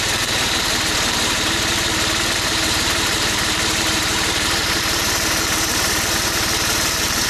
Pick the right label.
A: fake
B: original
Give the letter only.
A